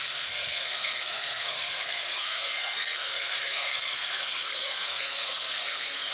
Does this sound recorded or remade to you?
remade